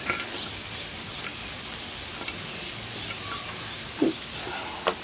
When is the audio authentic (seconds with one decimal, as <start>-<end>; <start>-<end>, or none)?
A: 0.0-5.0